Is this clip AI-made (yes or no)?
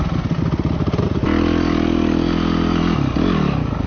no